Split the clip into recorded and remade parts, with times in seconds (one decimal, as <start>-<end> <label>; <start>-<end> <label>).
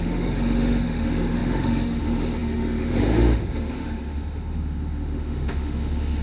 0.0-6.2 remade